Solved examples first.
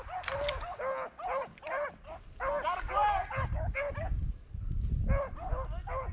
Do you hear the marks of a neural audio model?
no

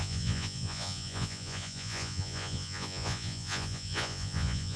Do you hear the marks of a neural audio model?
yes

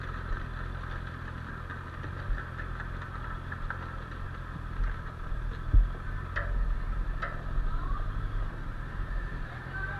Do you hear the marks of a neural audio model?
no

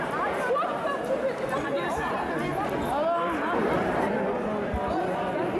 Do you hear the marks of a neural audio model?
no